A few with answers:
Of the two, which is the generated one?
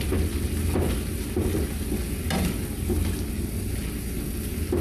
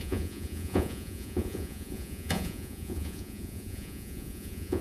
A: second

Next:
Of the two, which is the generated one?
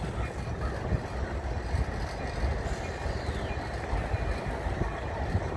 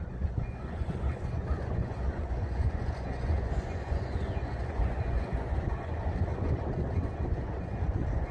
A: second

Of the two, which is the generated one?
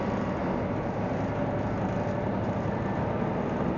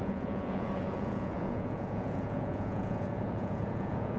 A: second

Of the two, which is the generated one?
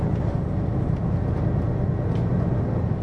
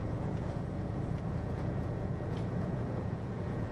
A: second